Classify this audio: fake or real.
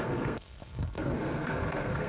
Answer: fake